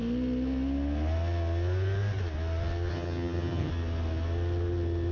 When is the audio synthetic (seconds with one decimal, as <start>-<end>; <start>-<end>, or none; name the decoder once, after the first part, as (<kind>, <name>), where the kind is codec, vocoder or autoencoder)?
2.9-3.7 (vocoder, HiFi-GAN)

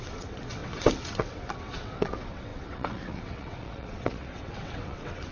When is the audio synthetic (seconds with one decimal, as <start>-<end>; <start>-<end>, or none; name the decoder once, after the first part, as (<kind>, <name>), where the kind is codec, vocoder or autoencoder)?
0.0-5.3 (vocoder, WaveNeXt)